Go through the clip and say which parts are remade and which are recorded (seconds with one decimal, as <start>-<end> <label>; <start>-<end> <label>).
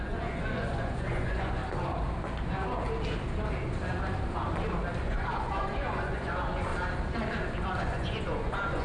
0.0-1.6 remade; 1.6-5.0 recorded; 5.0-6.7 remade; 6.7-7.8 recorded; 7.8-8.8 remade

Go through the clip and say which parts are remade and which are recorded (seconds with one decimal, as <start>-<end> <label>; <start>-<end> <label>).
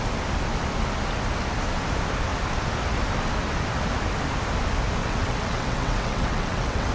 0.0-5.0 recorded; 5.0-6.9 remade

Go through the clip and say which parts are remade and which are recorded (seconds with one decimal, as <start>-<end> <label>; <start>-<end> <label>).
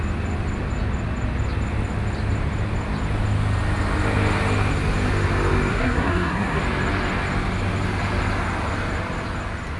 0.0-5.7 recorded; 5.7-6.6 remade; 6.6-9.8 recorded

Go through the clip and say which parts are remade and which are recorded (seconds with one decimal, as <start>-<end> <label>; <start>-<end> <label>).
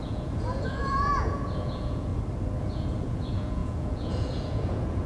0.0-2.1 remade; 2.1-2.6 recorded; 2.6-5.1 remade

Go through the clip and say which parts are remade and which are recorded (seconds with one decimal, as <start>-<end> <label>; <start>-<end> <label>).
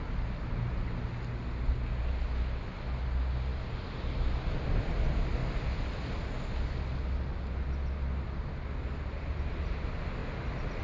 0.0-10.8 recorded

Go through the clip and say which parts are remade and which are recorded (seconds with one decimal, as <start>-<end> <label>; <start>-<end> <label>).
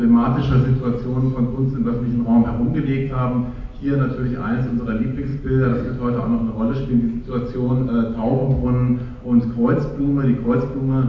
0.0-11.1 recorded